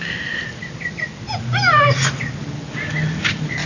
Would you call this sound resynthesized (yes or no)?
no